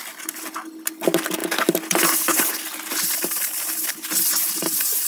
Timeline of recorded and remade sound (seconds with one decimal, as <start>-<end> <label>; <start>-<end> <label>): 0.0-1.4 recorded; 1.4-4.5 remade; 4.5-5.1 recorded